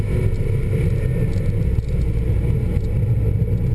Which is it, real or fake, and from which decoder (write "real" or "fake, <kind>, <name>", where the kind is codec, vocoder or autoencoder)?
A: real